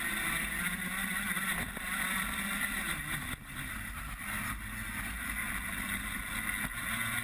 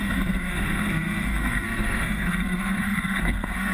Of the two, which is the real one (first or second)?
first